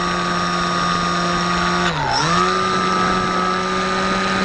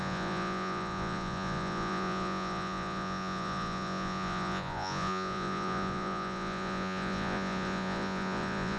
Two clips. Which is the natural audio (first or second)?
first